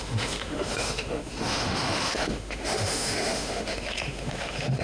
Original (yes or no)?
no